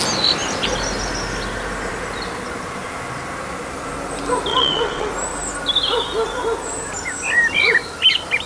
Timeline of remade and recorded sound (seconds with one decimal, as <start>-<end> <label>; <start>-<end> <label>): 0.0-4.5 recorded; 4.5-5.1 remade; 5.1-8.5 recorded